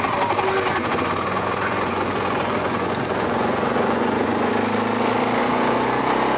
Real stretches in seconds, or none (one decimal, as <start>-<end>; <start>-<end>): 0.0-0.7; 4.5-5.4; 6.0-6.4